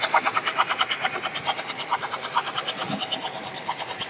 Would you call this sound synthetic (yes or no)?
no